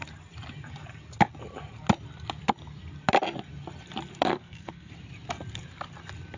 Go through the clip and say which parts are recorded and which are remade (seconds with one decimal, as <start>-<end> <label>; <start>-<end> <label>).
0.0-4.3 recorded; 4.3-4.9 remade; 4.9-6.4 recorded